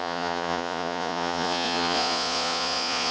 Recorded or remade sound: remade